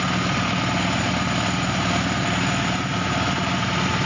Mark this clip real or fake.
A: real